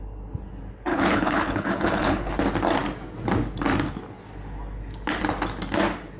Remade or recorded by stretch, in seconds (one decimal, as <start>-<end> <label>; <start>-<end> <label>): 0.0-0.9 recorded; 0.9-2.3 remade; 2.3-6.2 recorded